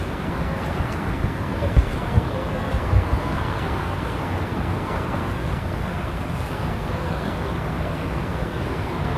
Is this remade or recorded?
remade